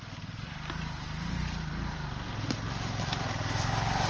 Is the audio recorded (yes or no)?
no